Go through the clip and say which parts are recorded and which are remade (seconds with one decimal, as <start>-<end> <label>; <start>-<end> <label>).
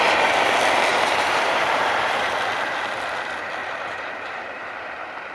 0.0-0.9 recorded; 0.9-2.3 remade; 2.3-3.6 recorded; 3.6-5.3 remade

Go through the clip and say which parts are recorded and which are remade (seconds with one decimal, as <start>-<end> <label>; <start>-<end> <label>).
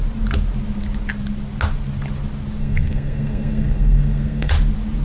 0.0-2.6 recorded; 2.6-4.5 remade; 4.5-5.0 recorded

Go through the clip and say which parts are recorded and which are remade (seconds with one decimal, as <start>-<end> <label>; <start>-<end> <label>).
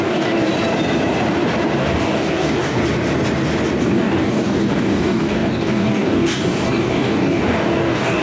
0.0-0.5 remade; 0.5-1.8 recorded; 1.8-2.8 remade; 2.8-3.8 recorded; 3.8-8.2 remade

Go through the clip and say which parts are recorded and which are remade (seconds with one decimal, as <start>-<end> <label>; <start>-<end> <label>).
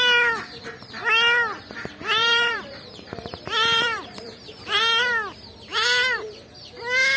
0.0-2.2 recorded; 2.2-4.8 remade; 4.8-5.7 recorded; 5.7-6.7 remade; 6.7-7.2 recorded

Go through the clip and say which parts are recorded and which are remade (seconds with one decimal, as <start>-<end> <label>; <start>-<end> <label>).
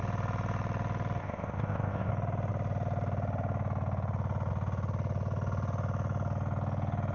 0.0-1.2 recorded; 1.2-2.1 remade; 2.1-7.1 recorded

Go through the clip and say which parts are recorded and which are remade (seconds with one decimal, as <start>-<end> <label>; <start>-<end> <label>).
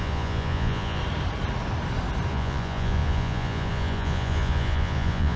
0.0-1.0 remade; 1.0-2.3 recorded; 2.3-5.4 remade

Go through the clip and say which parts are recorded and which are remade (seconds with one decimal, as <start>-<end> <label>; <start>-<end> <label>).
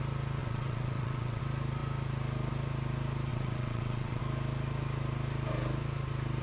0.0-0.4 recorded; 0.4-1.4 remade; 1.4-3.3 recorded; 3.3-4.2 remade; 4.2-6.4 recorded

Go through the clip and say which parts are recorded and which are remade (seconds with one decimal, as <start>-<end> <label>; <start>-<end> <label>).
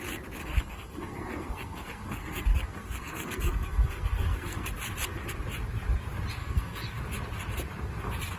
0.0-0.4 recorded; 0.4-4.7 remade; 4.7-6.4 recorded; 6.4-7.0 remade; 7.0-8.4 recorded